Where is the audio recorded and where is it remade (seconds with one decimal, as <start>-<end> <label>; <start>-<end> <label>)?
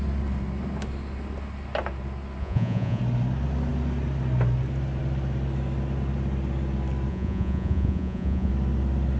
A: 0.0-2.4 recorded; 2.4-3.0 remade; 3.0-7.1 recorded; 7.1-8.5 remade; 8.5-9.2 recorded